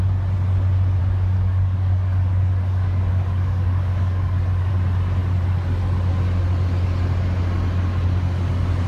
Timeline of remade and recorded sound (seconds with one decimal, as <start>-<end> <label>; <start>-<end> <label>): 0.0-1.0 recorded; 1.0-4.7 remade; 4.7-8.9 recorded